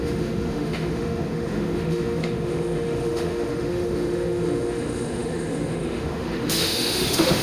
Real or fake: fake